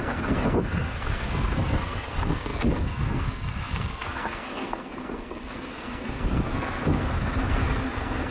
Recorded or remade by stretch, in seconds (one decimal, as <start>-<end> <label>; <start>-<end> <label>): 0.0-8.3 remade